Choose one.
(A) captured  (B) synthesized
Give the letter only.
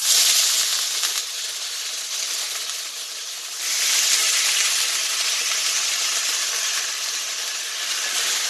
A